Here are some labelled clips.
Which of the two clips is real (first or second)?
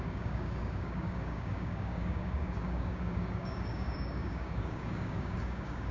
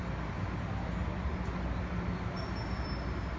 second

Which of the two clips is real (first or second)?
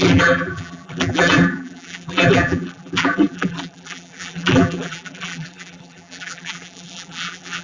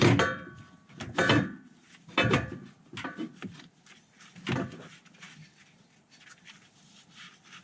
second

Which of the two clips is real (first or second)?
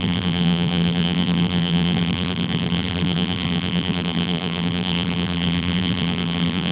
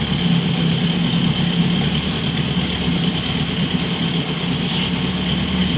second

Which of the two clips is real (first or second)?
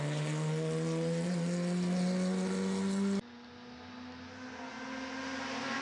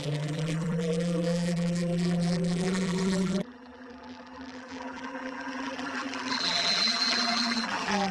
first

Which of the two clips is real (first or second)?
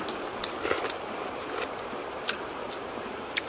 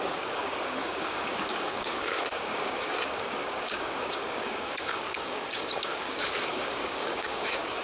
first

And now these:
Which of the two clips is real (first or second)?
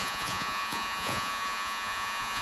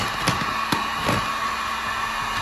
second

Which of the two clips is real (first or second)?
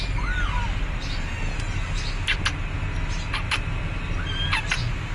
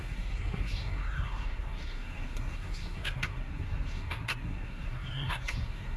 first